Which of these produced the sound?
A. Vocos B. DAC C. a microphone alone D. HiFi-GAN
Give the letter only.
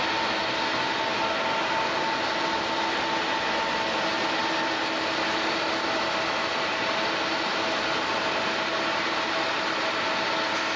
C